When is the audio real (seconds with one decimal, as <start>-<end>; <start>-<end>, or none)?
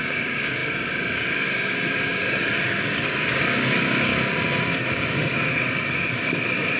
4.1-4.9